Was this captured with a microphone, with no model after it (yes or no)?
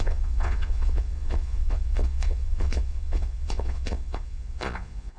no